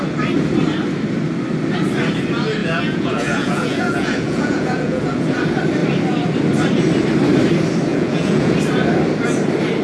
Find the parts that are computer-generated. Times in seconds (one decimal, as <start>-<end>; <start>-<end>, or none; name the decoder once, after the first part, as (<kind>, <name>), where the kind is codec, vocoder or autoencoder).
2.6-5.0 (vocoder, Vocos); 7.9-8.5